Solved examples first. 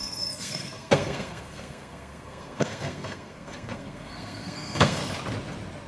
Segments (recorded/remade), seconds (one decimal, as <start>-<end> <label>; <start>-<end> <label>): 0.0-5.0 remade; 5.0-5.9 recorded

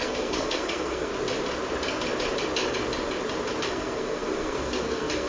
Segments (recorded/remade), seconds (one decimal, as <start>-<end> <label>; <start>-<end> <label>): 0.0-1.1 remade; 1.1-3.6 recorded; 3.6-5.3 remade

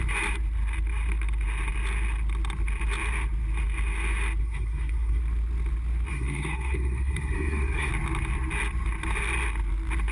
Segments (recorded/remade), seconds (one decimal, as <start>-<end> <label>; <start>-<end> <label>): 0.0-4.4 recorded; 4.4-5.2 remade; 5.2-6.1 recorded; 6.1-7.9 remade; 7.9-10.1 recorded